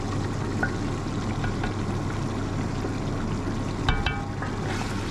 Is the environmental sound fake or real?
real